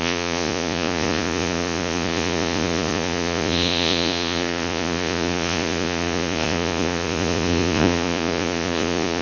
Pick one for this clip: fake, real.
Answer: fake